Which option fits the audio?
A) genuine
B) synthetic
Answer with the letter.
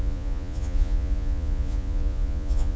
B